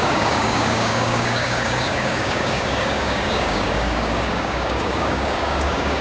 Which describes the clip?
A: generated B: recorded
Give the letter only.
A